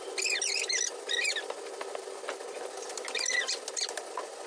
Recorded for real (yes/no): yes